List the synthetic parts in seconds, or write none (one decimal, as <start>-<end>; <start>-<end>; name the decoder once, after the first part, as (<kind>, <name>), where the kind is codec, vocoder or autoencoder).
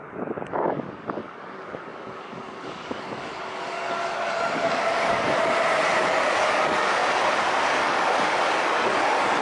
0.0-5.4 (codec, DAC); 6.0-7.0; 7.8-9.4